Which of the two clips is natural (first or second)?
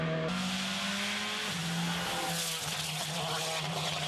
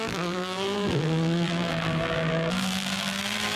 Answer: first